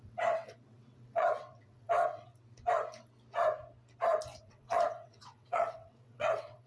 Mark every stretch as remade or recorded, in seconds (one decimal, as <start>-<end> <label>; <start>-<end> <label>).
0.0-2.3 remade; 2.3-4.4 recorded; 4.4-6.7 remade